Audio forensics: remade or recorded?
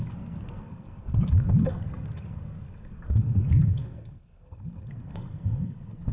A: remade